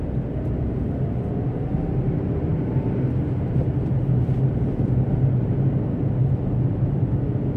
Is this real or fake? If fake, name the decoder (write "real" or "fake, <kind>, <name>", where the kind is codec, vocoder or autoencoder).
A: real